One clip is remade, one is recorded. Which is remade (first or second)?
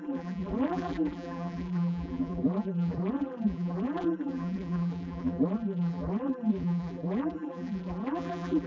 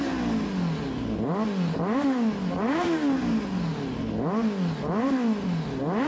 first